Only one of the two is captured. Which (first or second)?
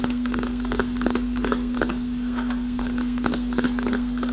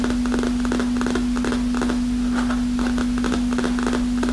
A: second